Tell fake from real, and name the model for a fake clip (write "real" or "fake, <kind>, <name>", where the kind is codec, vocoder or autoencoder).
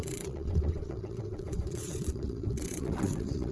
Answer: fake, vocoder, WaveNeXt